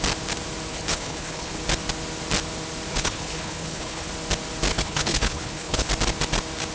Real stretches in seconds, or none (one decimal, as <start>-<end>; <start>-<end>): 0.0-0.7; 1.6-2.9; 4.1-4.7; 5.9-6.7